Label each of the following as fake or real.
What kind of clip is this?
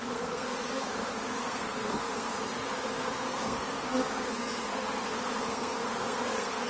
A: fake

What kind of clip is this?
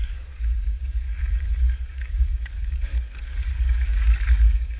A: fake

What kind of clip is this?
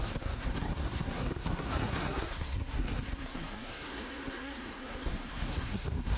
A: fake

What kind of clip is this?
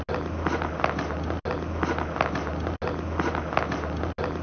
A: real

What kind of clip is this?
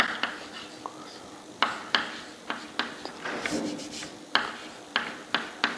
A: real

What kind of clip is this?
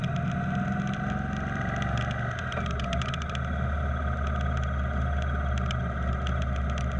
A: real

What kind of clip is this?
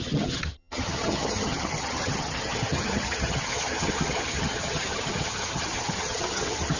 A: fake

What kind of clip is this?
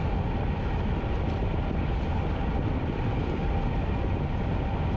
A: real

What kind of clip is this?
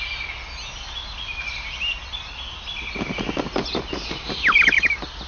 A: real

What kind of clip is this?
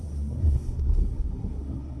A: fake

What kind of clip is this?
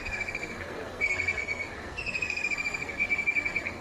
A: fake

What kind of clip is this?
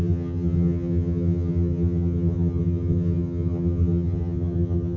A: fake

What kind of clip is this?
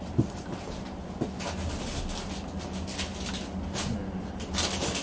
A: real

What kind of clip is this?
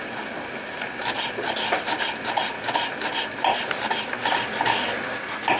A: real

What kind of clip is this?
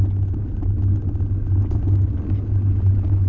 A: real